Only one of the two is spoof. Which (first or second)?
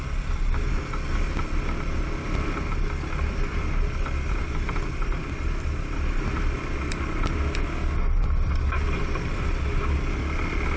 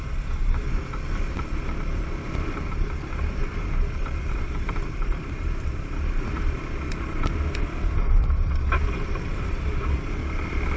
second